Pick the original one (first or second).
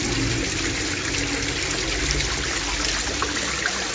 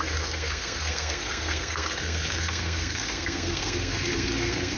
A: first